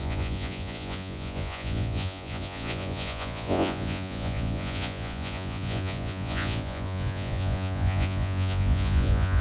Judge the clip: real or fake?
fake